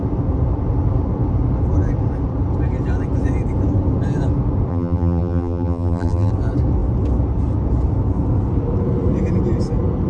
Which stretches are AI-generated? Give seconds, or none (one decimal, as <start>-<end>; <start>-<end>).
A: 4.7-6.3